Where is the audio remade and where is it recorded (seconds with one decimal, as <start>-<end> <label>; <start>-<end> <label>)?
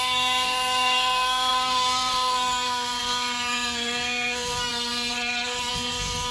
0.0-4.7 remade; 4.7-5.7 recorded; 5.7-6.3 remade